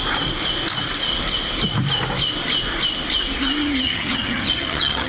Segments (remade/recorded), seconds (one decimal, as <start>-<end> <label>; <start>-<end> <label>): 0.0-3.6 recorded; 3.6-5.1 remade